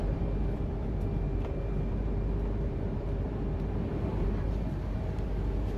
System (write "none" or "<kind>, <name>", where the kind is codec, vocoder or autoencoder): vocoder, BigVGAN v2